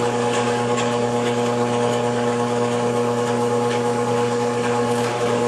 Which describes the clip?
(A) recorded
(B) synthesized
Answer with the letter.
B